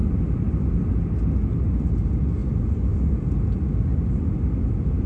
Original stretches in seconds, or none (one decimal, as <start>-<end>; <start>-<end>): 1.0-5.1